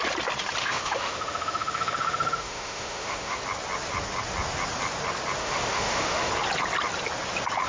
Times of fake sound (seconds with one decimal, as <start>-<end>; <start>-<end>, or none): 0.6-3.4; 5.4-6.3